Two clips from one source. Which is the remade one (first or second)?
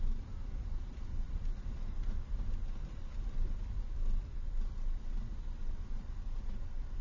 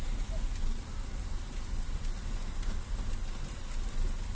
first